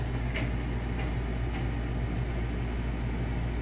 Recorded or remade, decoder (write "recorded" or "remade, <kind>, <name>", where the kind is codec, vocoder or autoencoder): recorded